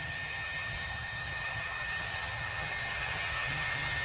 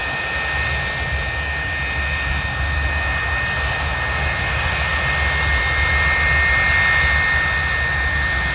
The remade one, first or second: first